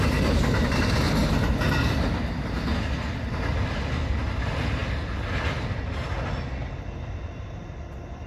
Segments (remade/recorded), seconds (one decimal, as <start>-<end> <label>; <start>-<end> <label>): 0.0-8.3 recorded